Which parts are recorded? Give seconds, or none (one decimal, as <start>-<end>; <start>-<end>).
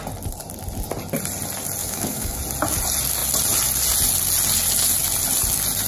0.0-1.8; 2.4-5.9